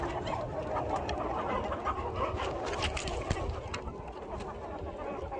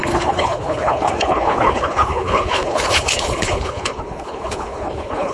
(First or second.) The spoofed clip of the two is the second